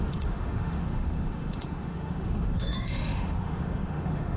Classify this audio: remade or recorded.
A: remade